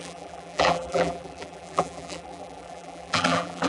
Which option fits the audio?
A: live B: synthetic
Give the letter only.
B